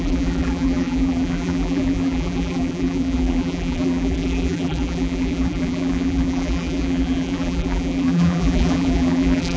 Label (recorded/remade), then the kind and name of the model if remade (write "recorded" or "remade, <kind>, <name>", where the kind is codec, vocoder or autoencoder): remade, vocoder, BigVGAN v2